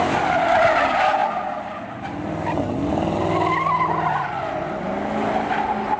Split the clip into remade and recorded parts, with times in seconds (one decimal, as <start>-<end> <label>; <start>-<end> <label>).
0.0-6.0 recorded